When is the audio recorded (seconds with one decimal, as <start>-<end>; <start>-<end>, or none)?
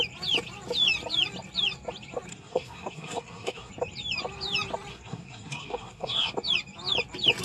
0.0-2.3; 3.7-4.9; 6.3-7.4